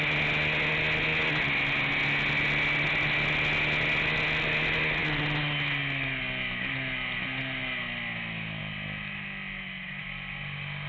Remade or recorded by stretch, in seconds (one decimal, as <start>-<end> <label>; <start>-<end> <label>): 0.0-10.9 recorded